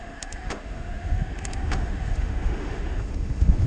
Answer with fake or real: fake